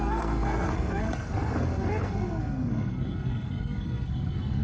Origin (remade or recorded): remade